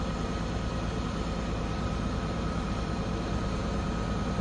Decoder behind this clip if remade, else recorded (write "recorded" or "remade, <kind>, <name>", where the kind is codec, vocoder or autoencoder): remade, vocoder, BigVGAN v2